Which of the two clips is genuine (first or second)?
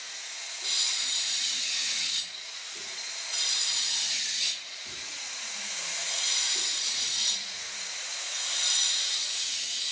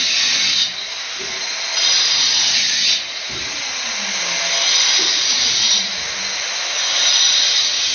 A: second